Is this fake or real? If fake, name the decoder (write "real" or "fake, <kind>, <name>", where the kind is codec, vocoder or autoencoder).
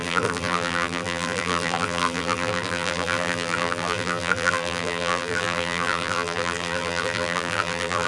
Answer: fake, vocoder, BigVGAN v2